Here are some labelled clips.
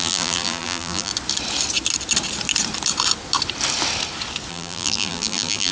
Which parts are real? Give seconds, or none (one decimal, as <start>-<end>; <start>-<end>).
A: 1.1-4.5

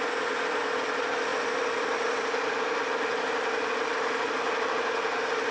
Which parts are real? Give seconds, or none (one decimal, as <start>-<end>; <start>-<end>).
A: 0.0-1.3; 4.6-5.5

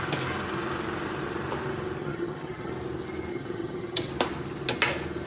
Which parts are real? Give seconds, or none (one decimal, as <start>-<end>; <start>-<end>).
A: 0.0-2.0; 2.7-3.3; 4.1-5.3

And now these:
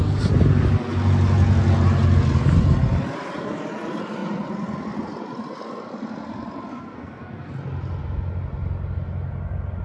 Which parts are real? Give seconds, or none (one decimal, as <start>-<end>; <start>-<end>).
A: 0.0-6.7; 7.5-9.8

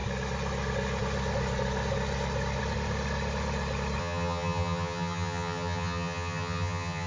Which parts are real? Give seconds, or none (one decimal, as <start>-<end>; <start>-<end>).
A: 0.0-4.0

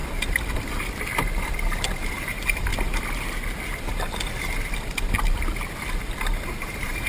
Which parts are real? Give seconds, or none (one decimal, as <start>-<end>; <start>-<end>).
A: 0.0-2.2; 2.7-6.2